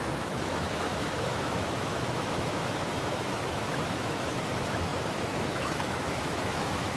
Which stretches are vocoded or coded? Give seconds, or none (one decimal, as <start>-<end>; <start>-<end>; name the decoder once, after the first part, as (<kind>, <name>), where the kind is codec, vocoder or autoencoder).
0.0-7.0 (autoencoder, DAC-VAE)